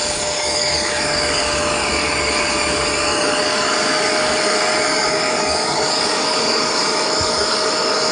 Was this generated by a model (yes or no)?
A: yes